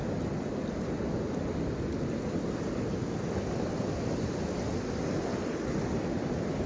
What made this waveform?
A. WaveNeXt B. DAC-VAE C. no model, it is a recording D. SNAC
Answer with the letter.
C